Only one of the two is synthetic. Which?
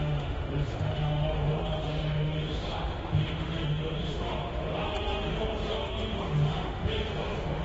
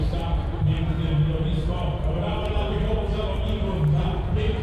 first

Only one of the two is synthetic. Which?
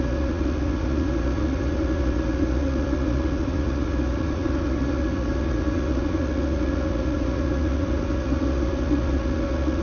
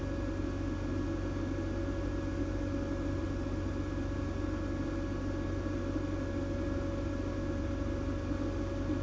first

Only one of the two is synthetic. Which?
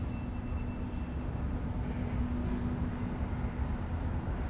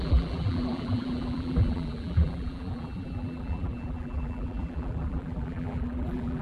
second